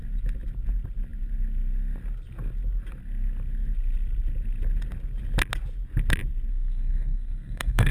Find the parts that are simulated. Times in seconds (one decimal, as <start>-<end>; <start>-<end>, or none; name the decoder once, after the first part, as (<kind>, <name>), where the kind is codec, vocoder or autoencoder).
6.5-7.9 (codec, SNAC)